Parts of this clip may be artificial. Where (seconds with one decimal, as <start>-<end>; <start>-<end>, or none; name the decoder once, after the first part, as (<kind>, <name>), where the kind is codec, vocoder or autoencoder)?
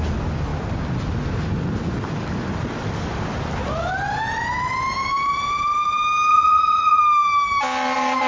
6.3-7.0 (vocoder, Vocos)